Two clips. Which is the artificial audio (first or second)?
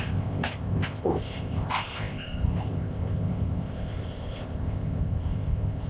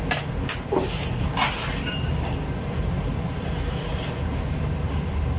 first